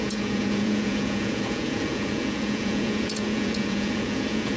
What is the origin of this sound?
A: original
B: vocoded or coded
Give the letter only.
B